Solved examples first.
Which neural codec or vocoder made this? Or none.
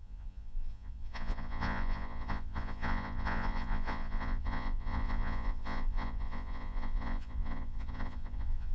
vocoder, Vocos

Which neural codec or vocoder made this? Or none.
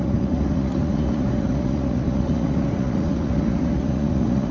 vocoder, Vocos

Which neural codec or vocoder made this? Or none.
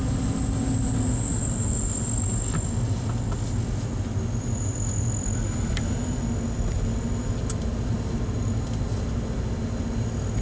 none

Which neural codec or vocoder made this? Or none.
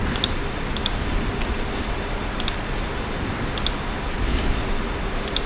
none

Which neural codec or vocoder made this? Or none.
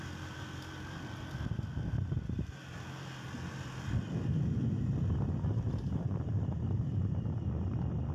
none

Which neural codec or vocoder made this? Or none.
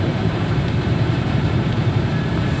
vocoder, BigVGAN v2